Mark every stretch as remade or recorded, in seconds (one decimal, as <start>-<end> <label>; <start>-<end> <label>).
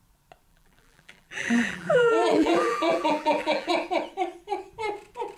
0.0-0.5 recorded; 0.5-3.7 remade; 3.7-5.4 recorded